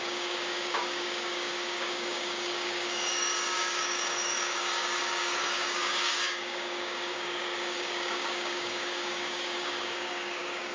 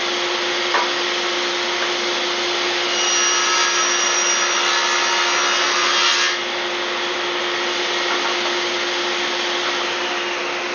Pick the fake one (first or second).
first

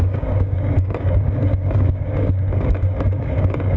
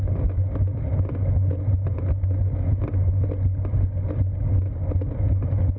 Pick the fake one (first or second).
first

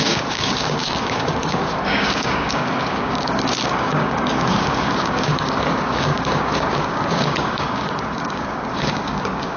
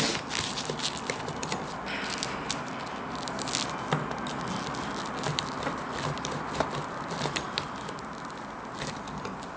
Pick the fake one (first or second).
first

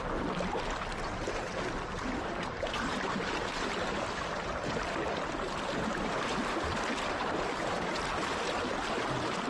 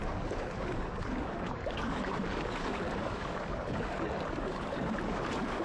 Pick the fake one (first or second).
second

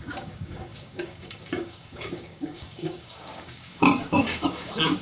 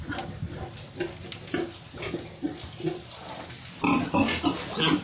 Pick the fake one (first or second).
first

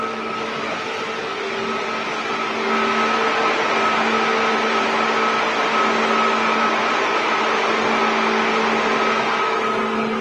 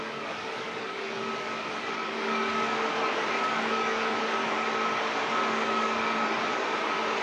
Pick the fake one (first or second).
second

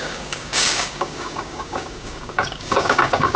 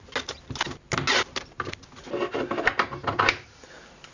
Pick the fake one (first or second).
first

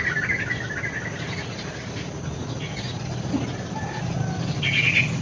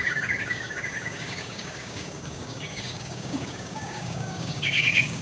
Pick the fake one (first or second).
second